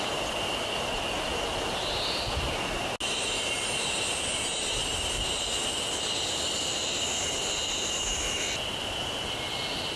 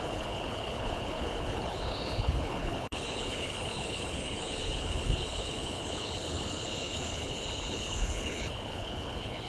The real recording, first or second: first